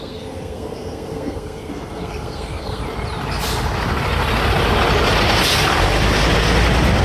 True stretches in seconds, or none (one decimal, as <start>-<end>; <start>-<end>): 2.8-7.0